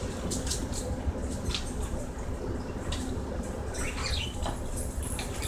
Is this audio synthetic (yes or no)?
yes